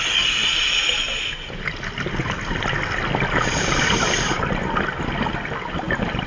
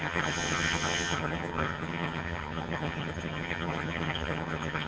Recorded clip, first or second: first